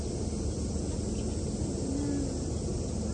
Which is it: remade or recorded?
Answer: recorded